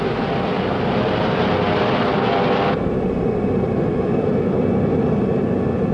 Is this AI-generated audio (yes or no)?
no